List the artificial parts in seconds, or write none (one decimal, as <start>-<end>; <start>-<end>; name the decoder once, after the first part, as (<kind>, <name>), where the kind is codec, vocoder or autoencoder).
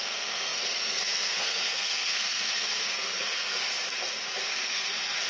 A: 0.0-3.7 (codec, SNAC); 4.4-5.3